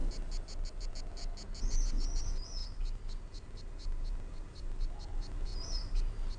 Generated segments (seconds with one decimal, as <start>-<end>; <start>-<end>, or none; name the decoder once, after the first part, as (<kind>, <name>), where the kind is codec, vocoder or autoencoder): none